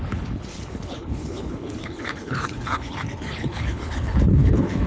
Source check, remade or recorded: remade